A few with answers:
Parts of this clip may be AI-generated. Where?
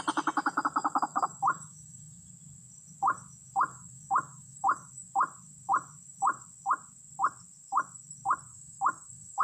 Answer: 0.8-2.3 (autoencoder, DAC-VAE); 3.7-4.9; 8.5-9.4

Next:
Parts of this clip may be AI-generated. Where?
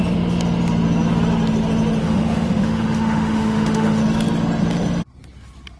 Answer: 2.0-4.0 (autoencoder, DAC-VAE)